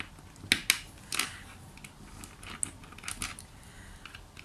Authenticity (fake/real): real